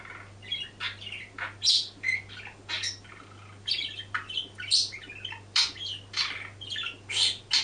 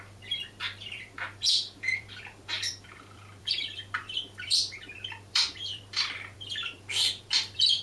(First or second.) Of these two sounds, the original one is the first